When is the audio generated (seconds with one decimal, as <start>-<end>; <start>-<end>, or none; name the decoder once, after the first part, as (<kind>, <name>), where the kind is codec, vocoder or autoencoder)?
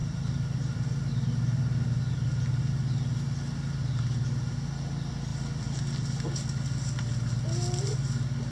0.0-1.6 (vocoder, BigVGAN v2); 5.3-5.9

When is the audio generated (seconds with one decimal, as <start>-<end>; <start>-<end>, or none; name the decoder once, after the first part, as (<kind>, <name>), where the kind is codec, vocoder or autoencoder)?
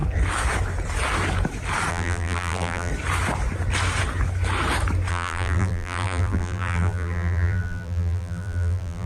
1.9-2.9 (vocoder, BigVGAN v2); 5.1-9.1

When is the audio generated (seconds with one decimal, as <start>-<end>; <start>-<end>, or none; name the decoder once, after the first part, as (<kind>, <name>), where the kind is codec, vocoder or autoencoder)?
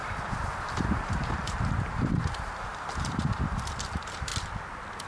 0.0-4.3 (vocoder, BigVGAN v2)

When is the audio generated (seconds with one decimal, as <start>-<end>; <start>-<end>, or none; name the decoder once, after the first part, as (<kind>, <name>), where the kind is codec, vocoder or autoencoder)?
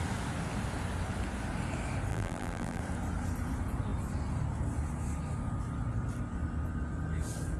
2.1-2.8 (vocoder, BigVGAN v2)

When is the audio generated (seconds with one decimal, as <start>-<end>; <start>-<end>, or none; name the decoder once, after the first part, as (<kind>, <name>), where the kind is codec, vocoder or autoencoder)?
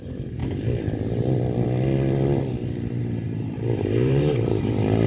0.0-0.4 (vocoder, BigVGAN v2); 3.0-5.1